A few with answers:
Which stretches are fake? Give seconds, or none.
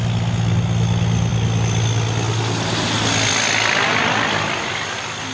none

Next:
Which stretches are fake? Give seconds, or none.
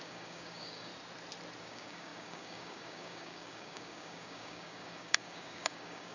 0.0-0.9; 1.6-6.1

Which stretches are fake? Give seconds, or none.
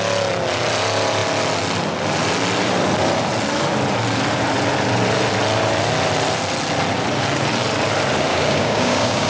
8.3-9.3